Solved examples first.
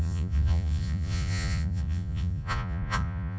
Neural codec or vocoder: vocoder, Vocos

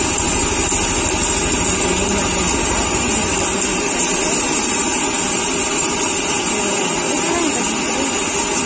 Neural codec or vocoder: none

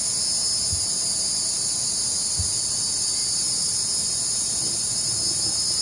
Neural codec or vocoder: none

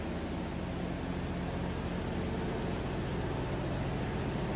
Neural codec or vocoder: none